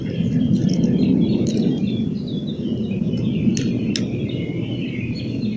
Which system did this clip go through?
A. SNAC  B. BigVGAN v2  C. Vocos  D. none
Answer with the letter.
B